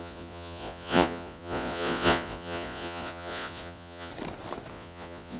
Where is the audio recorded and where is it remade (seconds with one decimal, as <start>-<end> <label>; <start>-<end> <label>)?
0.0-4.1 remade; 4.1-4.7 recorded; 4.7-5.4 remade